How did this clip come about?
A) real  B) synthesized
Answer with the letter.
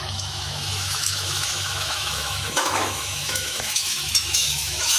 B